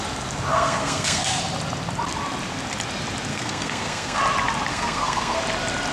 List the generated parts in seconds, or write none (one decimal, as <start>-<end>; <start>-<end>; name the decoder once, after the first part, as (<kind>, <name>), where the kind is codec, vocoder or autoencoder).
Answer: 0.5-1.4 (codec, SNAC); 3.3-4.2; 4.7-5.4